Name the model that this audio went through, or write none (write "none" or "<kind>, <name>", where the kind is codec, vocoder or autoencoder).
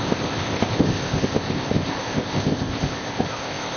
codec, ZipCodec